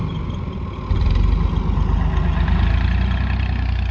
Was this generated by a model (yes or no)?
no